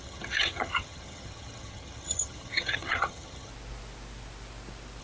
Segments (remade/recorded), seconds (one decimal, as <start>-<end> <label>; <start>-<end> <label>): 0.0-3.5 remade; 3.5-5.0 recorded